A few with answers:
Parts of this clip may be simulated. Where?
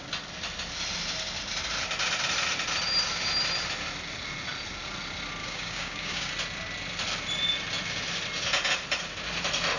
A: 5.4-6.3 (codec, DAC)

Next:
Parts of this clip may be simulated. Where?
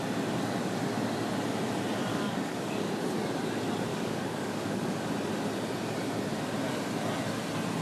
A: 2.1-2.9 (codec, DAC); 3.9-5.1